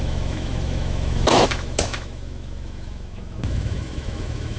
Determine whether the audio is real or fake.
fake